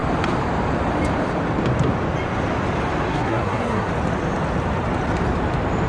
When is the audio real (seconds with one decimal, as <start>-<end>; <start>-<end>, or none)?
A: 0.0-3.1; 3.9-5.9